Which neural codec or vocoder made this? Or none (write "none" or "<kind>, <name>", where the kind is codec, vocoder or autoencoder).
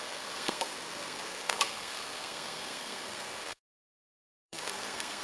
codec, SNAC